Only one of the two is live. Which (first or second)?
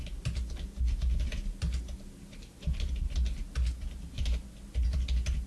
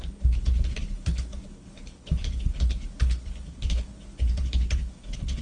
first